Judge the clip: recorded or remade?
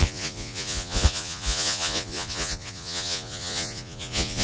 remade